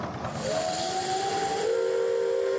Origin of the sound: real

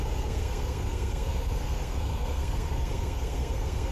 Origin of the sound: fake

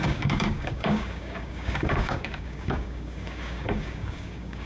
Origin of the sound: fake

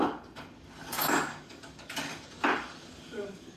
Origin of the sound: fake